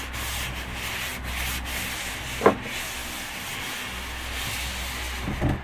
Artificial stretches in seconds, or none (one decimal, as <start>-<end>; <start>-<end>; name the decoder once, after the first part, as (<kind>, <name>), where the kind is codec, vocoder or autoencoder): none